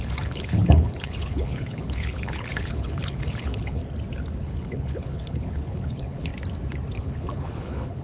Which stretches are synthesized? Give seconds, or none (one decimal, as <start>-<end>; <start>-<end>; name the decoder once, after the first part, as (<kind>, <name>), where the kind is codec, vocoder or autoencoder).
0.0-3.8 (codec, HILCodec); 4.4-6.3; 7.0-8.0